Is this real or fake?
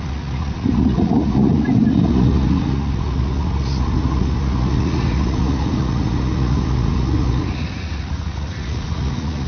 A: fake